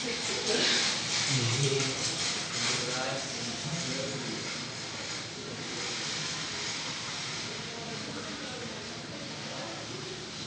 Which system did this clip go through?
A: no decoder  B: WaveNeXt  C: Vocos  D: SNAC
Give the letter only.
A